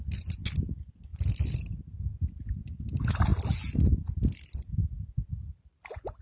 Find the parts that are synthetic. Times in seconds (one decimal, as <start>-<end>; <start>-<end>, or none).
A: none